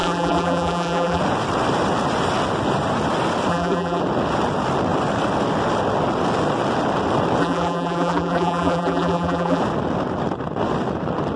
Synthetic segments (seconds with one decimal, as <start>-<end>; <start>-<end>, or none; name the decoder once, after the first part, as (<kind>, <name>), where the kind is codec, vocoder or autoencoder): 0.0-1.2 (vocoder, BigVGAN v2); 3.5-4.0; 7.4-9.6